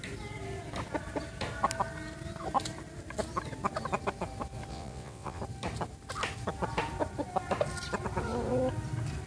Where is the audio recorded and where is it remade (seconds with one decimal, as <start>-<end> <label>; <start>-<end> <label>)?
0.0-4.7 recorded; 4.7-5.4 remade; 5.4-9.3 recorded